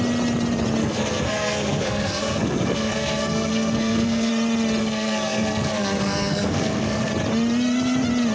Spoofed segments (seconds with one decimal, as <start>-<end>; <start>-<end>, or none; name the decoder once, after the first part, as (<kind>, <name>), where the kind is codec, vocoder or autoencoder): 0.8-4.3 (codec, SNAC); 4.8-7.1